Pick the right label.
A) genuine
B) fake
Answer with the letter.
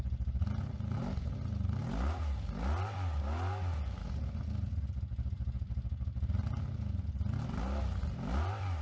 A